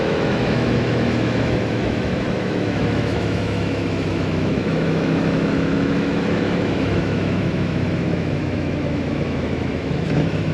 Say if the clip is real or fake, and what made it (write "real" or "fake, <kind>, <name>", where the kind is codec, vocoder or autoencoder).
fake, autoencoder, DAC-VAE